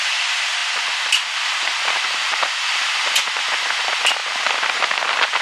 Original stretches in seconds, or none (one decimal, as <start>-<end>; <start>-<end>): 0.0-5.4